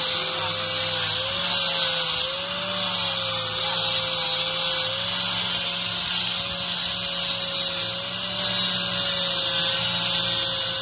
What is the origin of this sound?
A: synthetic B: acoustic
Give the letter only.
B